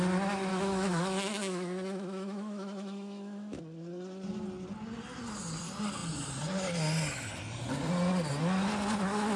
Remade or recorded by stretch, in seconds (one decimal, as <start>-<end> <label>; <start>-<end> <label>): 0.0-0.5 recorded; 0.5-3.6 remade; 3.6-9.4 recorded